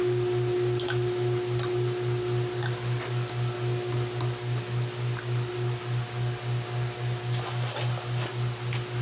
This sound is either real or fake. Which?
real